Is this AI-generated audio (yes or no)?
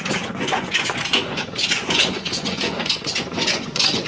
yes